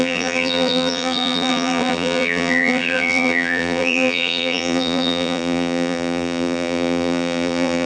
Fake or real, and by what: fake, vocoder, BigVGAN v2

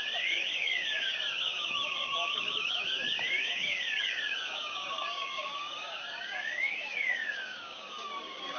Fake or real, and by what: fake, codec, DAC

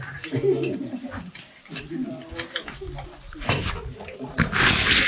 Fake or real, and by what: real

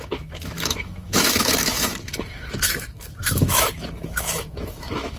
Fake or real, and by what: fake, autoencoder, DAC-VAE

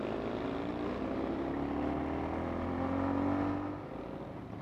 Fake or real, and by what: real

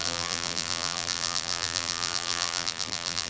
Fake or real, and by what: fake, vocoder, BigVGAN v2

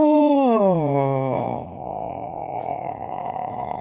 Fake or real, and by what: fake, vocoder, Vocos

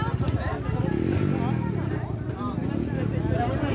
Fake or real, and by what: real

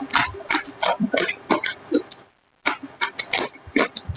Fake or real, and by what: real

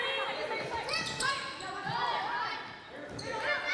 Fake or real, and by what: real